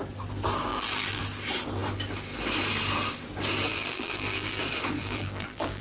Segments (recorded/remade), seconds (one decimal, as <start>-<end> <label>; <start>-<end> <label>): 0.0-0.7 recorded; 0.7-1.2 remade; 1.2-3.7 recorded; 3.7-4.6 remade; 4.6-5.0 recorded; 5.0-5.8 remade